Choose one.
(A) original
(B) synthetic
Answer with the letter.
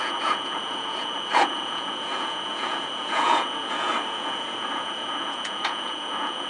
B